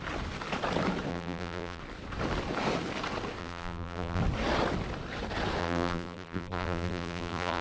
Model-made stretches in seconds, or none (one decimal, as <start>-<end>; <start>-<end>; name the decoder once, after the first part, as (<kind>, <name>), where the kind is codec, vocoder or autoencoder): 1.1-1.8 (vocoder, BigVGAN v2); 3.4-4.2; 5.6-7.6